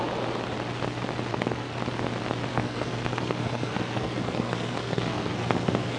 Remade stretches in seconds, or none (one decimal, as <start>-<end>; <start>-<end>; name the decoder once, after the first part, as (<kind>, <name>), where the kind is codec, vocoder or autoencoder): 1.3-1.8 (codec, SNAC); 2.5-6.0